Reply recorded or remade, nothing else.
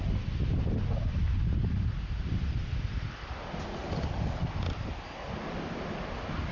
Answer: recorded